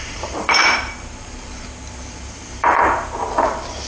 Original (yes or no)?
no